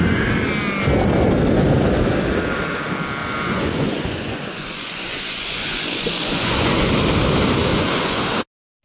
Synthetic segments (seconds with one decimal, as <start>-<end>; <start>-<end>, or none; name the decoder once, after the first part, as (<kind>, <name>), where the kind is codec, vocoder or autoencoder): 3.2-6.9 (vocoder, Vocos); 7.7-8.2